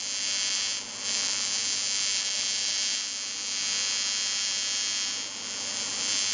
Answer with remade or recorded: recorded